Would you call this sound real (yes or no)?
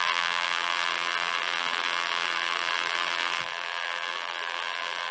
no